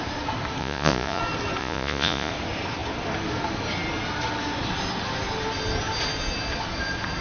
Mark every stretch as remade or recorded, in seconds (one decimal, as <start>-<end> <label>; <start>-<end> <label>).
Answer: 0.0-0.6 recorded; 0.6-1.2 remade; 1.2-1.6 recorded; 1.6-2.3 remade; 2.3-7.2 recorded